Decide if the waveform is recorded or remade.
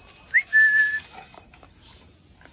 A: remade